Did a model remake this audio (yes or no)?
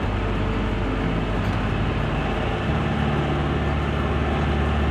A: no